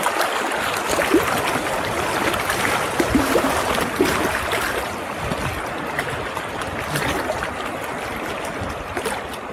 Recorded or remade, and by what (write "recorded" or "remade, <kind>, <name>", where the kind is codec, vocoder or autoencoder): recorded